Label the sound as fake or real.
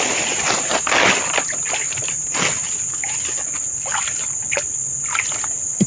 real